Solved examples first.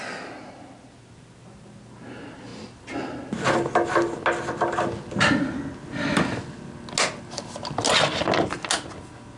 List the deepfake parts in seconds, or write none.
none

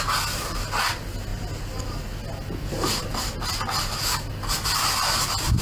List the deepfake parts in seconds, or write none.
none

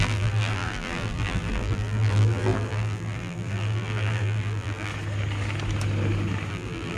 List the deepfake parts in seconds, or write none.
0.0-4.9 (vocoder, BigVGAN v2); 6.5-7.0

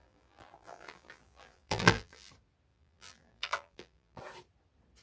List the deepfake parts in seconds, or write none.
0.0-2.3 (vocoder, BigVGAN v2); 2.7-4.2

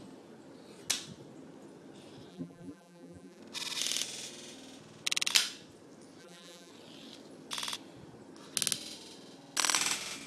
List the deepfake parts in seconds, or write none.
2.3-3.4 (vocoder, BigVGAN v2); 6.2-6.7

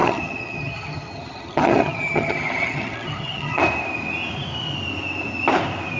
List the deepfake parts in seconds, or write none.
0.0-3.6 (vocoder, HiFi-GAN)